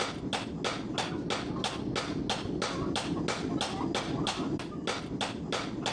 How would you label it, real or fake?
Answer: real